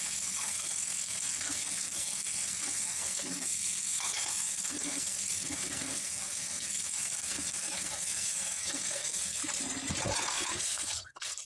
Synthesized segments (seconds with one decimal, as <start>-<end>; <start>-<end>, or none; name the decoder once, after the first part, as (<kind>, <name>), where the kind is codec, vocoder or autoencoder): 0.0-9.4 (codec, SNAC); 10.2-11.4